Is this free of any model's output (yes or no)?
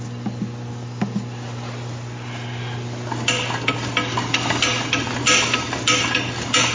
yes